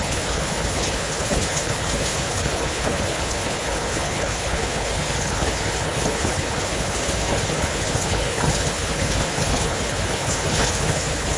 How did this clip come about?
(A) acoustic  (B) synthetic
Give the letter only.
B